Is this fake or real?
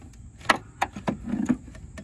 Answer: real